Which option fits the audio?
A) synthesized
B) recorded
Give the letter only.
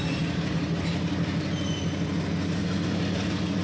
B